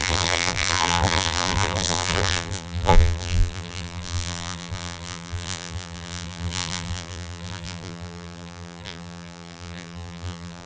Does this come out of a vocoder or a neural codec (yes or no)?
yes